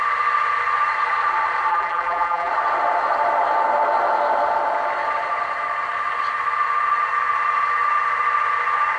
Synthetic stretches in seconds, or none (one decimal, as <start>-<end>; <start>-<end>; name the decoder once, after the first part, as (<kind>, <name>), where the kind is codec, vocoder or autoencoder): 1.7-2.5 (vocoder, BigVGAN v2)